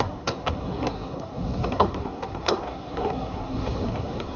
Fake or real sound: fake